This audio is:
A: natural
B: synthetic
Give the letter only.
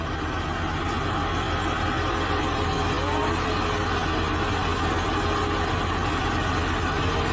A